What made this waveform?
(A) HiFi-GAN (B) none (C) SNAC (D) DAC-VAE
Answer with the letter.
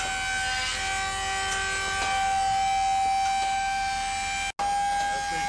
B